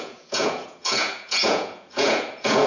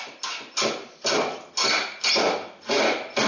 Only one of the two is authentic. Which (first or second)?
second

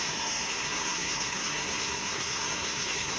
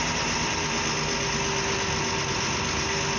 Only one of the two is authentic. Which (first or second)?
second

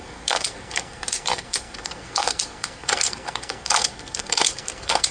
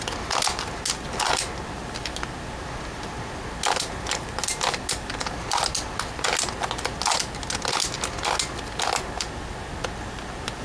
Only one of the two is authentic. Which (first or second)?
second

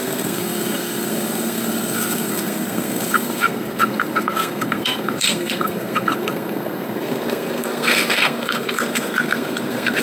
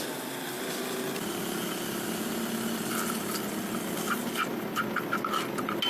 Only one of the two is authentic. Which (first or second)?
second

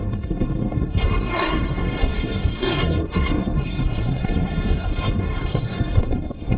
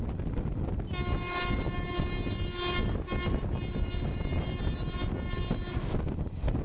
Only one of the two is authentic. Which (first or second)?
second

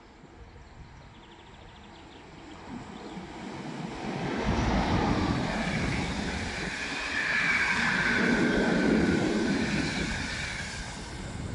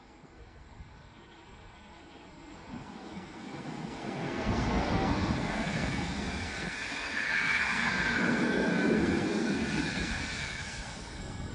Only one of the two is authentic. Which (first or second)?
first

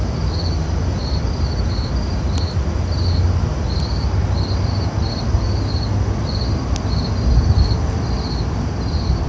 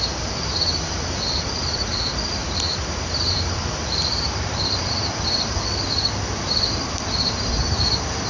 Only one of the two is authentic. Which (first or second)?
first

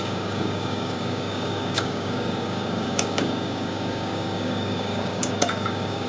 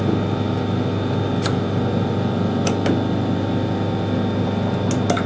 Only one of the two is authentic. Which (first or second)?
second